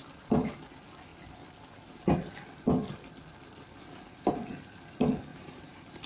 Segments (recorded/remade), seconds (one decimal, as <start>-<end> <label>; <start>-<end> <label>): 0.0-5.3 recorded; 5.3-6.1 remade